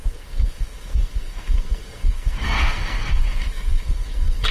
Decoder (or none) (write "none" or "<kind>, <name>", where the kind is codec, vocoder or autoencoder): codec, SNAC